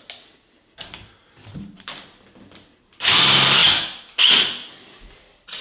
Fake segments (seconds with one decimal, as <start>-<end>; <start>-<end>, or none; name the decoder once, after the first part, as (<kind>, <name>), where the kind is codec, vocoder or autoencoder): none